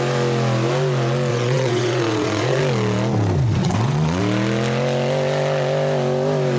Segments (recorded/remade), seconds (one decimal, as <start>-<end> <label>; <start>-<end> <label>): 0.0-1.3 recorded; 1.3-2.6 remade; 2.6-3.6 recorded; 3.6-4.2 remade; 4.2-6.6 recorded